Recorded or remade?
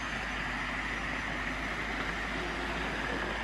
recorded